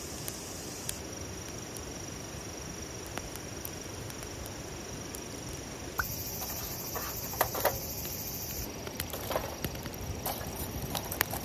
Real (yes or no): no